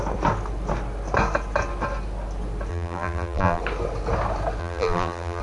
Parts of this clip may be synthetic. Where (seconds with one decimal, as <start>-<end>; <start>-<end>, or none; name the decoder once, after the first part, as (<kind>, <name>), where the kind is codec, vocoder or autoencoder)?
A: 2.7-3.6 (vocoder, BigVGAN v2); 4.6-5.4